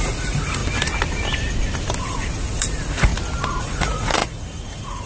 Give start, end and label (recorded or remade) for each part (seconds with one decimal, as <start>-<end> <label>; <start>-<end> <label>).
0.0-0.6 remade; 0.6-2.0 recorded; 2.0-3.1 remade; 3.1-3.6 recorded; 3.6-5.1 remade

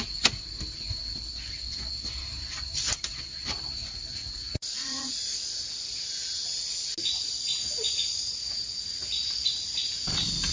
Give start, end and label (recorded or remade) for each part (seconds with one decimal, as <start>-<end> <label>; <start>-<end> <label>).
0.0-3.8 recorded; 3.8-5.1 remade; 5.1-10.5 recorded